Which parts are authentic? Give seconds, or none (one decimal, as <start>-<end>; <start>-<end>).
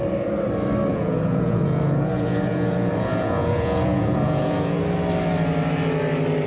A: 0.0-0.9; 4.8-6.5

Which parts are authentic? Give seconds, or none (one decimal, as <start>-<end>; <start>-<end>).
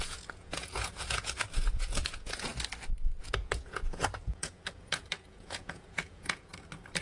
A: 2.5-3.2; 6.5-7.0